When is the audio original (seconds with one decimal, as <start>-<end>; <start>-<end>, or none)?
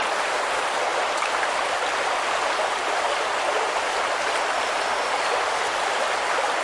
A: 0.0-6.6